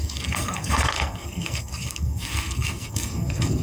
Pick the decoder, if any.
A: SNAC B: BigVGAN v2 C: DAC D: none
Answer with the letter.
A